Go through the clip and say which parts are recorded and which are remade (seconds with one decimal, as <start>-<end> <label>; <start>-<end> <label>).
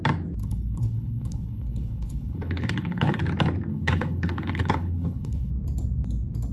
0.0-0.4 recorded; 0.4-3.2 remade; 3.2-3.7 recorded; 3.7-5.5 remade; 5.5-6.5 recorded